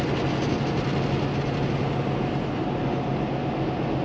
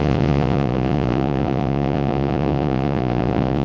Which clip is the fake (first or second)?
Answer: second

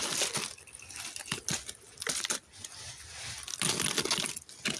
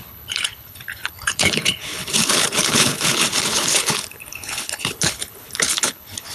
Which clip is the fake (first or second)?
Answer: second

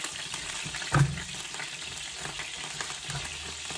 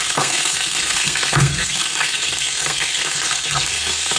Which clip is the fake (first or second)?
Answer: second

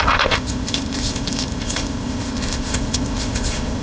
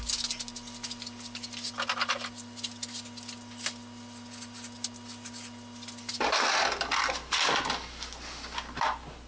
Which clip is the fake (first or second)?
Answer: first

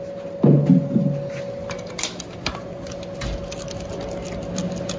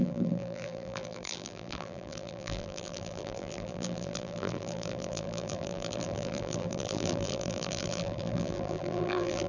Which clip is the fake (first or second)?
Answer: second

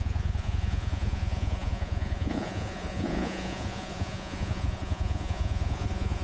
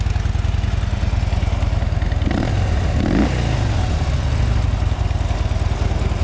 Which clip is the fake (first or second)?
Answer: first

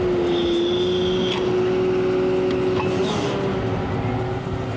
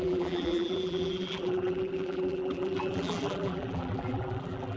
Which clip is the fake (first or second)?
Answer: second